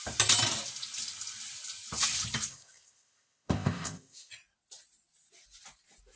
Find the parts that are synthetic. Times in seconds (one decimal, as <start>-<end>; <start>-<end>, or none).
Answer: 2.5-4.3